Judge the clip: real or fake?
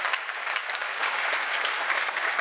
fake